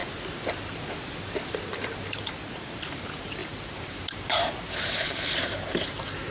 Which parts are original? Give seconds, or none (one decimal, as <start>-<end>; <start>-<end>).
0.0-2.5